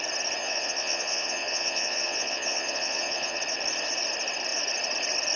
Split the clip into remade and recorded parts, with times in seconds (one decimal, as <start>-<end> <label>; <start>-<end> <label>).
0.0-0.4 recorded; 0.4-3.4 remade; 3.4-5.4 recorded